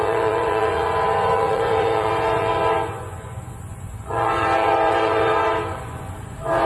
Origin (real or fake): fake